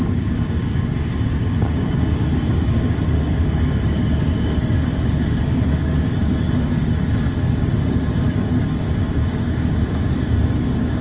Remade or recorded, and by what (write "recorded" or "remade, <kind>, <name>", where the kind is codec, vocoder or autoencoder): remade, codec, DAC